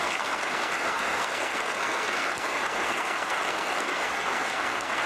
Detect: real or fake fake